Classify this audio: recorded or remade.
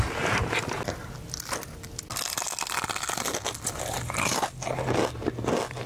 recorded